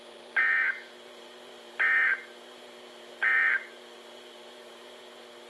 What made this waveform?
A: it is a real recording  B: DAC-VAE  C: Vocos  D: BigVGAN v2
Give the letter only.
D